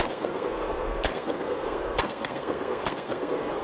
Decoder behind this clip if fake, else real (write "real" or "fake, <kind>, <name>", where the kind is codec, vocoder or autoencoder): fake, codec, SNAC